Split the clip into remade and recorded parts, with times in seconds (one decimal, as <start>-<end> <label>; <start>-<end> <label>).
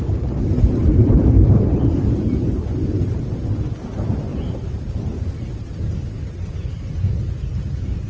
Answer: 0.0-1.0 recorded; 1.0-3.3 remade; 3.3-4.3 recorded; 4.3-5.2 remade; 5.2-8.1 recorded